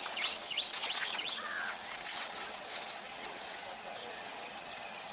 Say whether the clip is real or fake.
fake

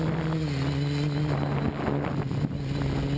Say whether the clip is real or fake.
real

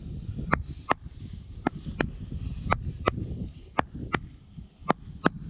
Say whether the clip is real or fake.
real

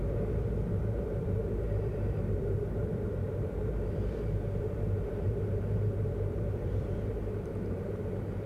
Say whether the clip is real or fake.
fake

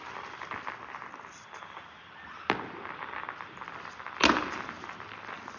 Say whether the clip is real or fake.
real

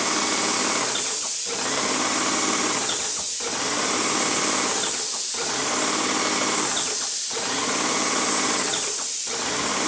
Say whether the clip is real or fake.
real